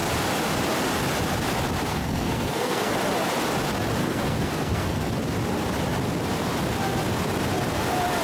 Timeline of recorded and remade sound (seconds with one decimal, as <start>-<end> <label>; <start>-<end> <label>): 0.0-1.9 recorded; 1.9-2.9 remade; 2.9-4.0 recorded; 4.0-5.1 remade; 5.1-8.2 recorded